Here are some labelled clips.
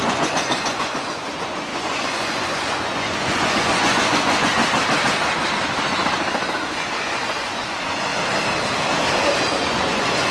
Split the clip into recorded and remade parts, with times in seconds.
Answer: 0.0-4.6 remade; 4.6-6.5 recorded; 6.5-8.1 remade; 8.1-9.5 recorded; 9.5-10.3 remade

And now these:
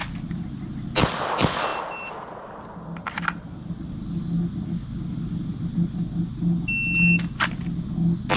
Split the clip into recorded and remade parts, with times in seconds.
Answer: 0.0-8.4 recorded

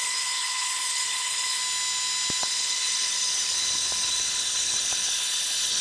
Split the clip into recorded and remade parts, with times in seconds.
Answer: 0.0-1.6 remade; 1.6-2.4 recorded; 2.4-5.8 remade

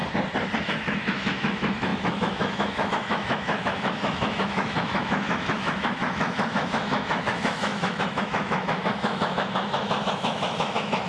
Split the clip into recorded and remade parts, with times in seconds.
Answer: 0.0-0.6 recorded; 0.6-11.1 remade